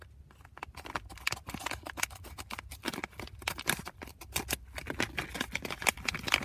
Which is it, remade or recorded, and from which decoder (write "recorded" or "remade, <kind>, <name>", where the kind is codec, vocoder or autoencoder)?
recorded